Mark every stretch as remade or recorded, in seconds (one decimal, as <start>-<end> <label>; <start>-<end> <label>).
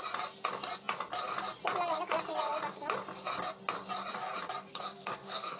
0.0-4.7 recorded; 4.7-5.6 remade